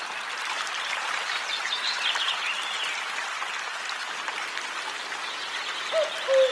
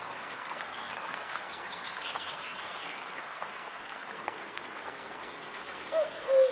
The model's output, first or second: second